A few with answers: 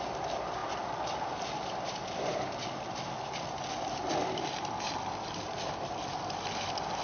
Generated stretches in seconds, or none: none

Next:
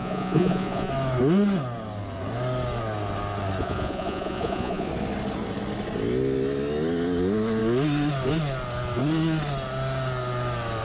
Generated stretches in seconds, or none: 0.0-0.9; 3.6-4.9

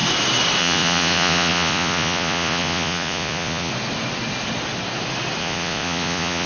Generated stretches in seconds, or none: 0.6-3.7; 5.4-6.5